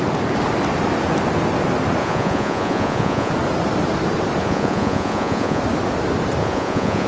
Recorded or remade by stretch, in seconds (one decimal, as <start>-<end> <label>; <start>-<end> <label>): 0.0-2.0 recorded; 2.0-3.3 remade; 3.3-4.4 recorded; 4.4-5.6 remade; 5.6-6.4 recorded; 6.4-7.1 remade